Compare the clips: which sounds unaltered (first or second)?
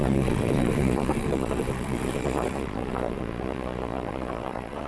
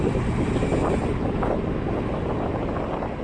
second